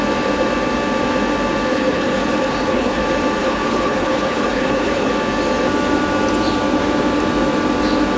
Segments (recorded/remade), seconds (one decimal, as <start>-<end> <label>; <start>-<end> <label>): 0.0-1.7 recorded; 1.7-3.0 remade; 3.0-3.4 recorded; 3.4-5.1 remade; 5.1-8.2 recorded